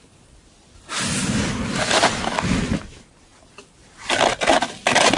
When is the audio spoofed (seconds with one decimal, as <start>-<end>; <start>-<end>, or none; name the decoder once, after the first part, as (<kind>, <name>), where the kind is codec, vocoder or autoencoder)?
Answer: none